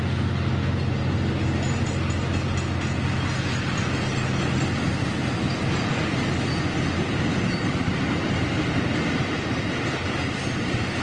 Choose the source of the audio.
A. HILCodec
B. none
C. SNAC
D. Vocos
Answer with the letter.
B